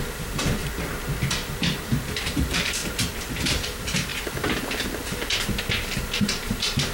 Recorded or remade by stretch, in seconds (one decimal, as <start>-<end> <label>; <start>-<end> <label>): 0.0-0.6 remade; 0.6-1.6 recorded; 1.6-2.8 remade; 2.8-3.3 recorded; 3.3-4.1 remade; 4.1-6.2 recorded; 6.2-6.9 remade